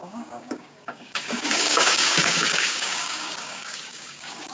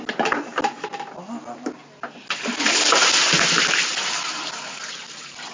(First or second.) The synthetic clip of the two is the first